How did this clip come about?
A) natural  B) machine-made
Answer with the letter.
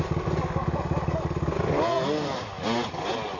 A